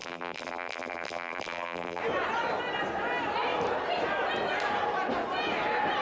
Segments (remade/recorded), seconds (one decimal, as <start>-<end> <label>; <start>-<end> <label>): 0.0-2.0 remade; 2.0-6.0 recorded